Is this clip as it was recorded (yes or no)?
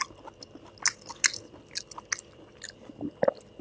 yes